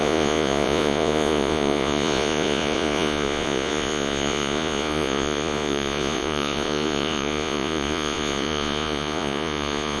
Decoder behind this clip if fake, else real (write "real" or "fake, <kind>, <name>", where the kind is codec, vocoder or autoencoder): fake, vocoder, Vocos